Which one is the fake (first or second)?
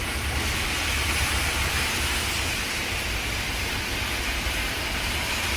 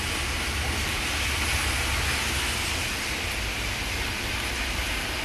first